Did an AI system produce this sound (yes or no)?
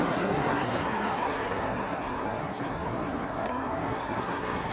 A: yes